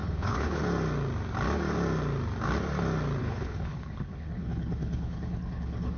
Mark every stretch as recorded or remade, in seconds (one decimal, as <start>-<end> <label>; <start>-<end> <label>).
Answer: 0.0-0.6 remade; 0.6-3.2 recorded; 3.2-6.0 remade